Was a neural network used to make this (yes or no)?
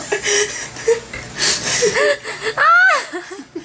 no